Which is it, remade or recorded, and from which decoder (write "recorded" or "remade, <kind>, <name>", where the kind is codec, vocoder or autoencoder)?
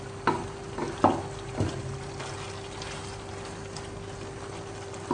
recorded